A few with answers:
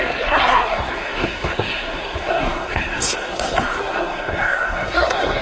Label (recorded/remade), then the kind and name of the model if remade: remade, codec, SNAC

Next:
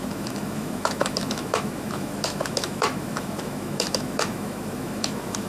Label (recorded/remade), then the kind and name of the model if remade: remade, autoencoder, DAC-VAE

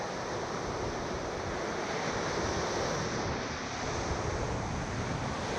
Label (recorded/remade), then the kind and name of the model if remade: recorded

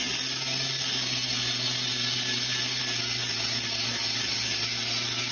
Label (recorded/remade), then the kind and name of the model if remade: recorded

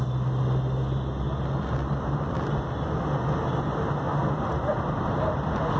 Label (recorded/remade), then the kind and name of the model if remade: recorded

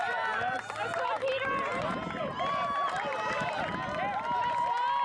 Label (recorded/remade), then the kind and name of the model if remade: recorded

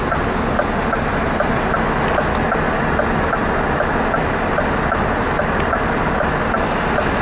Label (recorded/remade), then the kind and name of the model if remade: recorded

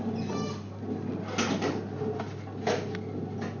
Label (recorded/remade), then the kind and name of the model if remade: recorded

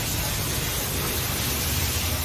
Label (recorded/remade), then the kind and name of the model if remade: recorded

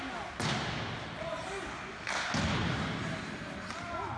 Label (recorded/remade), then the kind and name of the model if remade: recorded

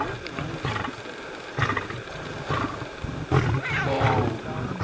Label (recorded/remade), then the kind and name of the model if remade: recorded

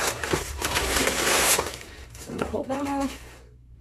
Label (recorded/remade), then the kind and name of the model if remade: remade, codec, SNAC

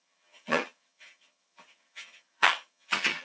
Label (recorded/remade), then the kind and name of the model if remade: remade, vocoder, HiFi-GAN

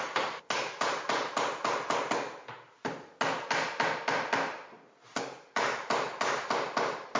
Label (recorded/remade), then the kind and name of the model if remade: recorded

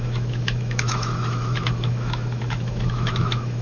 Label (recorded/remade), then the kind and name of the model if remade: remade, autoencoder, DAC-VAE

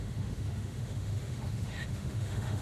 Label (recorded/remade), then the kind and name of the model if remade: remade, autoencoder, DAC-VAE